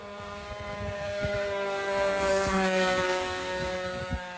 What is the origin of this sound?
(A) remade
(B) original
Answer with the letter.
A